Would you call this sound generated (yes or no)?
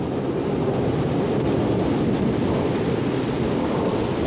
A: no